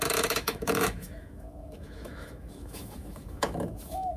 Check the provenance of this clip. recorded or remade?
remade